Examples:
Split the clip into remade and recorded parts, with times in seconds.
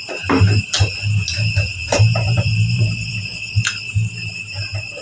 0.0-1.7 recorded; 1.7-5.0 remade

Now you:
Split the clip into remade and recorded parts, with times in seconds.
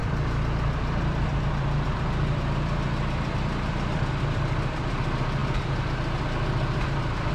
0.0-7.3 remade